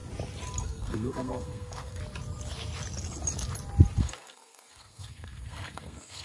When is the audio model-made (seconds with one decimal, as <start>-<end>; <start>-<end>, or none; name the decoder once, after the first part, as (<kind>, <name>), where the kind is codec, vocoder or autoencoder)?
0.6-2.0 (codec, SNAC); 4.0-6.2

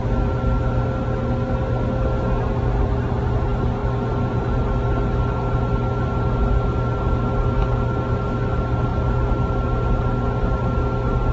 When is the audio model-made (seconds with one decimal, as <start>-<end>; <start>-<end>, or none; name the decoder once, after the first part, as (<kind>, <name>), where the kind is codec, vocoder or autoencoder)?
none